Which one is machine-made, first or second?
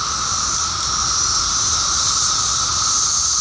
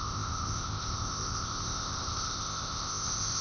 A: second